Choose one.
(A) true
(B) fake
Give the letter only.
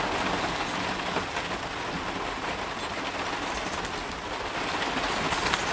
A